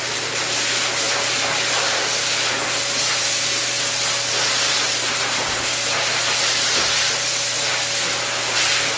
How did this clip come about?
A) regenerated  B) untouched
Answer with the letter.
B